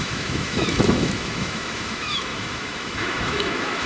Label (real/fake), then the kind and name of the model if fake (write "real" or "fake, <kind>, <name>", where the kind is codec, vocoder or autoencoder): fake, autoencoder, DAC-VAE